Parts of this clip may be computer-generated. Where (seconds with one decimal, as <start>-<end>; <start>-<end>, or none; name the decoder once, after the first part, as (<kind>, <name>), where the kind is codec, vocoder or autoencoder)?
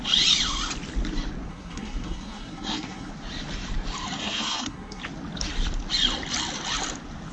1.5-3.1 (codec, SNAC); 4.2-5.0